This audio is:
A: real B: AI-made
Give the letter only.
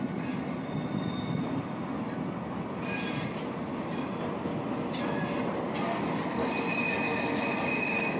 A